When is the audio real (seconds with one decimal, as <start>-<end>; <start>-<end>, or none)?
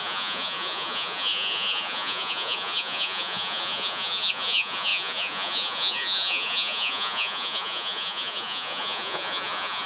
none